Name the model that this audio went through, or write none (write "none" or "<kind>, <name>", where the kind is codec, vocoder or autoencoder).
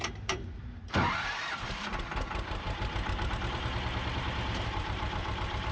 vocoder, BigVGAN v2